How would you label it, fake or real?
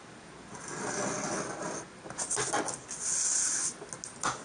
real